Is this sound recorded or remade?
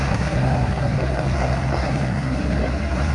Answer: remade